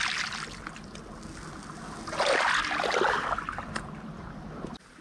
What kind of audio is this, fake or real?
real